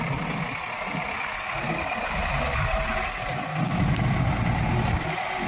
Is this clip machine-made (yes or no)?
no